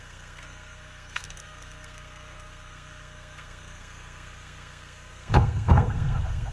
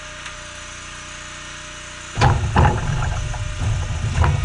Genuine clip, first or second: second